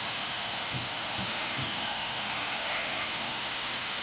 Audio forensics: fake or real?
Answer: fake